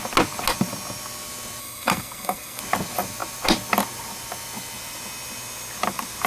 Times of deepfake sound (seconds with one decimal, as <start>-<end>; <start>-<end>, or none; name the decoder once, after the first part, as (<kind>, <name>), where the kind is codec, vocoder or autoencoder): 1.6-2.6 (codec, SNAC)